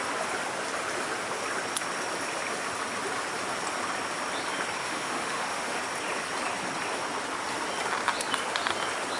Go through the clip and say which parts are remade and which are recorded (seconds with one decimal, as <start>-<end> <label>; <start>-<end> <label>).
0.0-4.8 recorded; 4.8-5.8 remade; 5.8-9.2 recorded

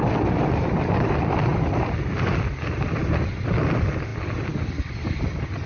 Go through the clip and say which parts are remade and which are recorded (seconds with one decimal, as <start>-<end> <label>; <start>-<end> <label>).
0.0-5.7 recorded

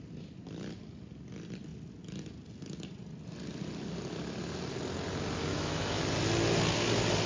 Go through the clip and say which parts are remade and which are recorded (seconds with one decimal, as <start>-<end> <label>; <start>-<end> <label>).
0.0-5.5 recorded; 5.5-6.0 remade; 6.0-7.3 recorded

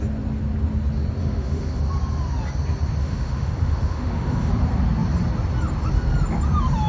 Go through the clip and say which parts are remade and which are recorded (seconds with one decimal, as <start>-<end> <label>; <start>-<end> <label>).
0.0-1.2 recorded; 1.2-1.8 remade; 1.8-3.0 recorded; 3.0-4.5 remade; 4.5-6.9 recorded

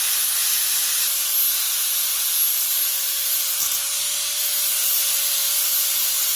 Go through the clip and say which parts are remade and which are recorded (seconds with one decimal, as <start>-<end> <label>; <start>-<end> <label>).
0.0-6.4 recorded

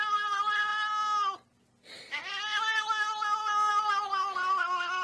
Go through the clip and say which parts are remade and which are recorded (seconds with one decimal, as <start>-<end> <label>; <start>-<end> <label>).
0.0-5.0 recorded

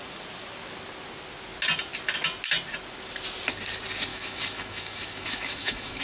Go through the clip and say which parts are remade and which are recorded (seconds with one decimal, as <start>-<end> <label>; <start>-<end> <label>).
0.0-4.1 recorded; 4.1-6.0 remade